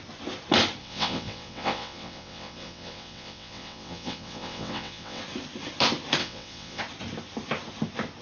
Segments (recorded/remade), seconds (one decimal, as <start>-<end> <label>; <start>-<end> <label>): 0.0-0.8 recorded; 0.8-5.2 remade; 5.2-6.2 recorded; 6.2-6.8 remade; 6.8-8.2 recorded